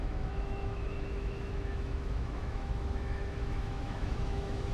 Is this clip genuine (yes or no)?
no